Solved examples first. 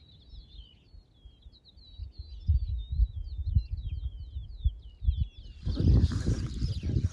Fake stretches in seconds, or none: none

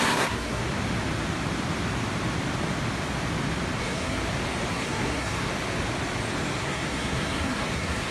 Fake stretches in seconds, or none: 0.0-0.6 (codec, SNAC); 3.8-4.2; 4.7-5.5; 6.6-8.1